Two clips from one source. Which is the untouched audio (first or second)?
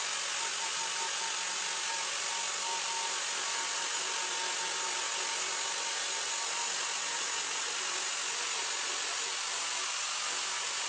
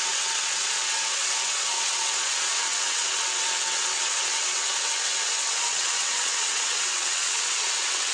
first